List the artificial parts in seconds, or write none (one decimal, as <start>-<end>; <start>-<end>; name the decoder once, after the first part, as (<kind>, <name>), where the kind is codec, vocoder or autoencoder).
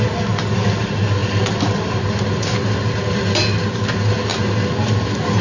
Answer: none